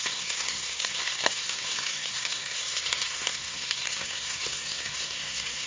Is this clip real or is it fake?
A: fake